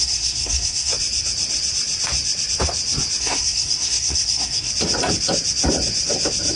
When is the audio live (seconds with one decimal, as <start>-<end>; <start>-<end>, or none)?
0.9-3.2; 4.7-6.6